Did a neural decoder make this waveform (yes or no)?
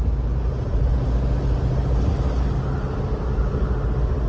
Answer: no